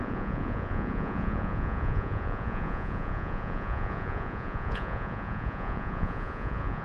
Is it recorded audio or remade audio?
remade